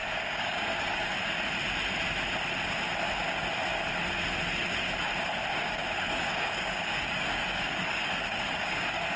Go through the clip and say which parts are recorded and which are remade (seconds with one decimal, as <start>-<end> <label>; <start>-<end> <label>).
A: 0.0-1.2 remade; 1.2-5.5 recorded; 5.5-9.2 remade